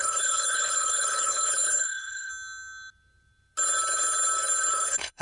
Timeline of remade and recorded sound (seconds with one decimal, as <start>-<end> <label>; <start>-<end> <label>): 0.0-2.3 remade; 2.3-4.7 recorded; 4.7-5.2 remade